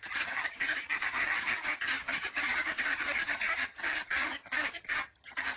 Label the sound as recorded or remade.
remade